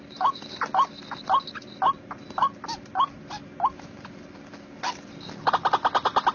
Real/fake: real